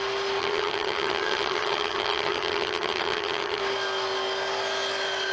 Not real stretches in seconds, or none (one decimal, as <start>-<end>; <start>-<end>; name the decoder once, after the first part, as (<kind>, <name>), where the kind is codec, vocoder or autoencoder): 0.4-3.6 (vocoder, HiFi-GAN)